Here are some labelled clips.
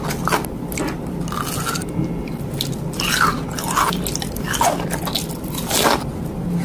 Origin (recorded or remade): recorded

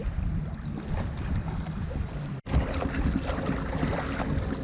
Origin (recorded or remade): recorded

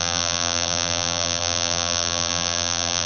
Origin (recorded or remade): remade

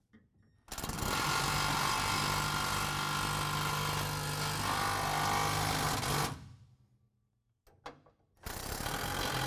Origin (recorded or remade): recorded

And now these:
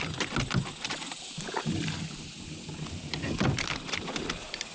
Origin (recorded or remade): recorded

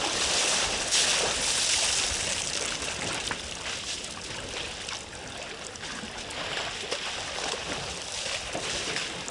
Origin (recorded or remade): recorded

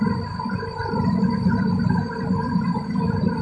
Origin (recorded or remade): remade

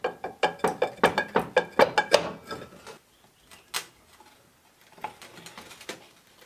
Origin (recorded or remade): recorded